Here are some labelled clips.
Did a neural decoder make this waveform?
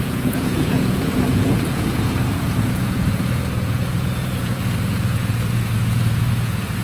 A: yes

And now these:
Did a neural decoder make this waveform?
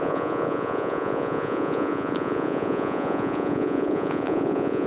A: yes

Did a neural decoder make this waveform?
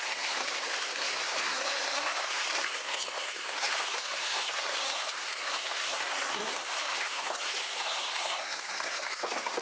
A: yes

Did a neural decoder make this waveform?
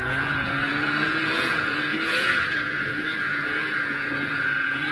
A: yes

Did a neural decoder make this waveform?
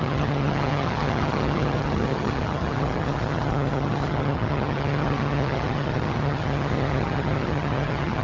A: yes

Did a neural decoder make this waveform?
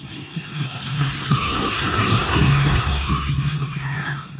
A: yes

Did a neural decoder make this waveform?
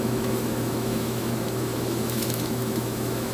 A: yes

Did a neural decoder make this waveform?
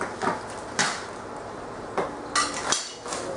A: no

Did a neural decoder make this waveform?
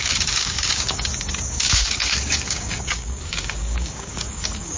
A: yes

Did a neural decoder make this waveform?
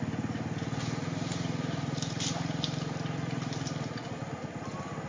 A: no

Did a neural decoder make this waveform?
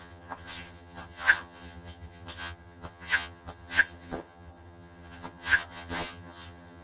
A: yes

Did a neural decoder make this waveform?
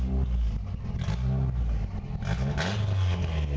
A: no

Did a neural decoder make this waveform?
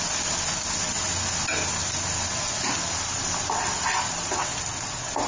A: no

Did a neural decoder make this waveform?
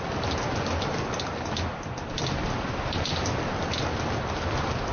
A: no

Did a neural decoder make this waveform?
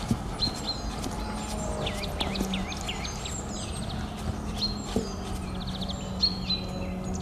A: no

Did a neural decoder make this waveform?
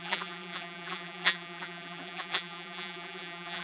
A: yes